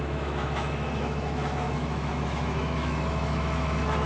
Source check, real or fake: fake